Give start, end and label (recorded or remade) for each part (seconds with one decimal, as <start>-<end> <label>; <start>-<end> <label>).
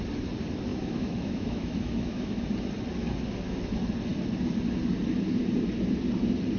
0.0-0.7 recorded; 0.7-2.4 remade; 2.4-6.6 recorded